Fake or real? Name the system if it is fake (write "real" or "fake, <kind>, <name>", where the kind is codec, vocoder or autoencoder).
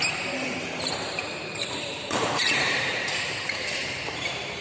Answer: fake, vocoder, BigVGAN v2